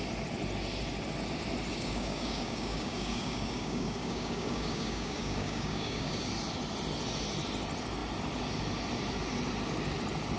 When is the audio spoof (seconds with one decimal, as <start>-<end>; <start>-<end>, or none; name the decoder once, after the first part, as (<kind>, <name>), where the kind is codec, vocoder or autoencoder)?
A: 1.7-6.3 (codec, DAC)